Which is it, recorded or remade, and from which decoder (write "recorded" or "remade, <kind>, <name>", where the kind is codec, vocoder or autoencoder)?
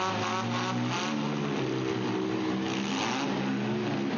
recorded